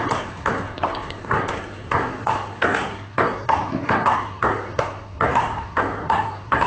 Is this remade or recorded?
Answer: remade